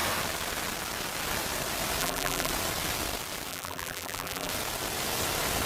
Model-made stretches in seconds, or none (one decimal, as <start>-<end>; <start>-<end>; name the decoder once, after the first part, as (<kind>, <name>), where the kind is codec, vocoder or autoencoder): 2.0-2.5 (vocoder, BigVGAN v2); 3.5-4.5